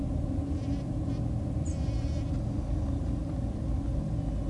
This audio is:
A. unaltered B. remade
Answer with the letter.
A